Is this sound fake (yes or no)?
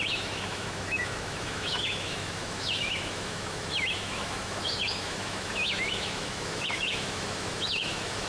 yes